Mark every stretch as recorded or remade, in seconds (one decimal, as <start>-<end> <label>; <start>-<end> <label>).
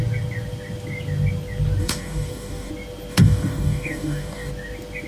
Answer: 0.0-1.8 recorded; 1.8-2.7 remade; 2.7-3.1 recorded; 3.1-4.5 remade; 4.5-5.1 recorded